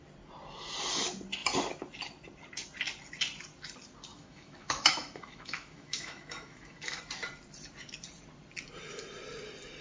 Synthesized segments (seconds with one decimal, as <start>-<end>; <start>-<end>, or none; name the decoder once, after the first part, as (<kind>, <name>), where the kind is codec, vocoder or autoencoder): 4.1-7.0 (autoencoder, DAC-VAE)